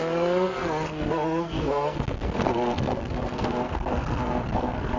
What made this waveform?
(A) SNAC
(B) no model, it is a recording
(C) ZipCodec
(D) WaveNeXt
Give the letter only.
A